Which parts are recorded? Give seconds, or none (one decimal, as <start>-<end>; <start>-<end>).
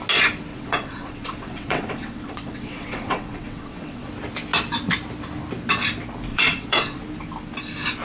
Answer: 0.0-0.5; 4.1-6.3; 7.0-8.0